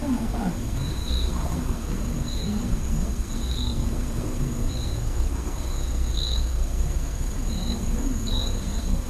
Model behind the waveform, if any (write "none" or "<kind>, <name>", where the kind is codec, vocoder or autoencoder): codec, SNAC